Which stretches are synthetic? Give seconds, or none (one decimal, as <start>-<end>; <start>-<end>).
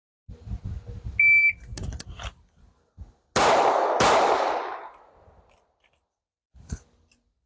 none